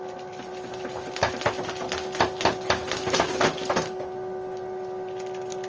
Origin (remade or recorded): recorded